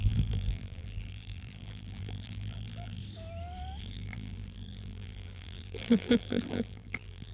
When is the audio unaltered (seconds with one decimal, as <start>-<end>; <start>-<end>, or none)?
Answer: 3.0-3.8